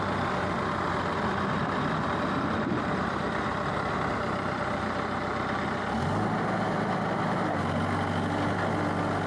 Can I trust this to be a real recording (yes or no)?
yes